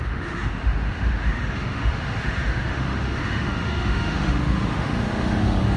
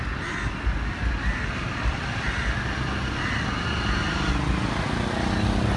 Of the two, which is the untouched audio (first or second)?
second